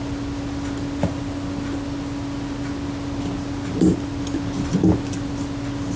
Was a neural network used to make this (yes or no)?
no